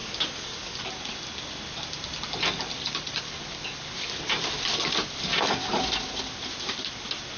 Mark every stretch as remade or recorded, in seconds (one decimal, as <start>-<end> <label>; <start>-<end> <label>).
0.0-0.8 remade; 0.8-7.4 recorded